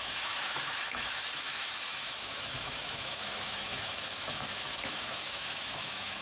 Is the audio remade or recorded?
remade